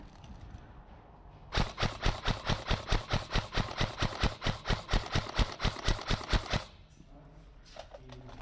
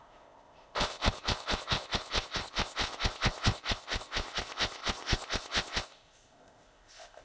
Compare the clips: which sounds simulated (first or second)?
second